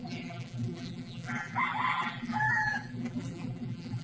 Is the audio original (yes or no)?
no